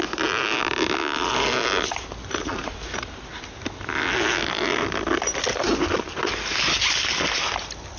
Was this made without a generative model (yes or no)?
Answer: yes